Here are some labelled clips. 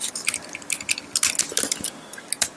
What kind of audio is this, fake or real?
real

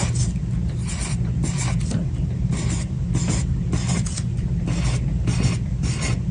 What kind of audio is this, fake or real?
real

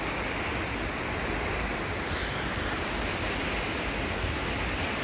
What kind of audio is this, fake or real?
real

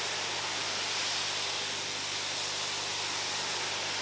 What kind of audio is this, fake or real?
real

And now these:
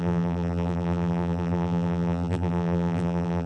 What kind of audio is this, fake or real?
fake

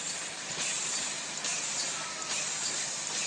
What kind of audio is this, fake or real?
real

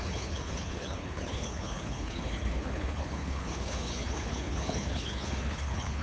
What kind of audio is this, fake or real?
fake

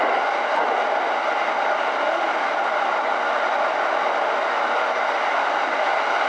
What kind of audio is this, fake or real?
real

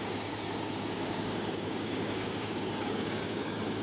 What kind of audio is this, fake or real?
fake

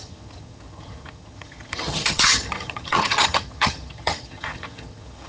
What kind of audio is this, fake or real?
fake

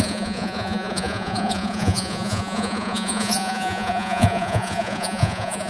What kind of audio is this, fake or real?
fake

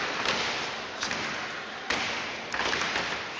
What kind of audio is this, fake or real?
real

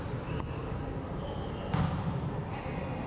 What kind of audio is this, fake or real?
real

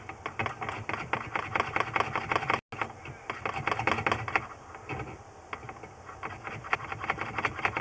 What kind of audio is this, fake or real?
real